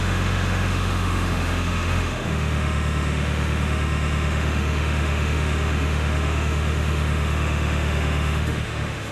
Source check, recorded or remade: remade